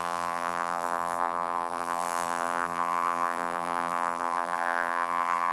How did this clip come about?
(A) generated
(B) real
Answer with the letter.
A